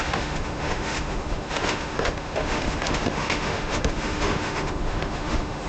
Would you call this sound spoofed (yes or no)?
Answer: yes